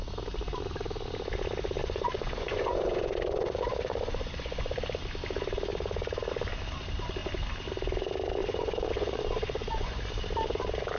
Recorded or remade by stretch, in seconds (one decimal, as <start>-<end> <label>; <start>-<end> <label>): 0.0-1.8 recorded; 1.8-4.8 remade; 4.8-8.4 recorded; 8.4-10.0 remade; 10.0-11.0 recorded